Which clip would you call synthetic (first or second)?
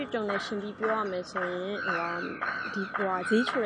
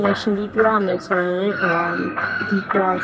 second